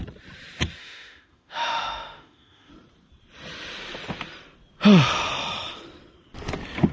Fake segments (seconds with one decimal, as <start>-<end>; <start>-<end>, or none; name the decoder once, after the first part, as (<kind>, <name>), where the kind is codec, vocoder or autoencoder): 0.8-2.7 (autoencoder, DAC-VAE)